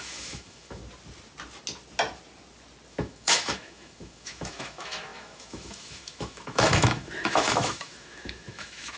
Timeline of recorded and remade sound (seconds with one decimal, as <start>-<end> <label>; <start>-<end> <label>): 0.0-0.8 remade; 0.8-2.9 recorded; 2.9-9.0 remade